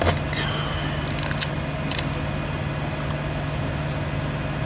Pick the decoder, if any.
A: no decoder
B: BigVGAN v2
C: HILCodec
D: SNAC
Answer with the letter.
A